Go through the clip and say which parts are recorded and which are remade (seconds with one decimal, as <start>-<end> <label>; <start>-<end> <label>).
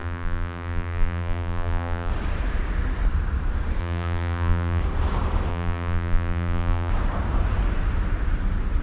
0.0-2.1 remade; 2.1-3.8 recorded; 3.8-4.8 remade; 4.8-5.5 recorded; 5.5-6.9 remade; 6.9-8.8 recorded